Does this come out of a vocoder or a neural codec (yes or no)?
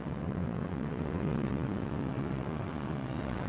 yes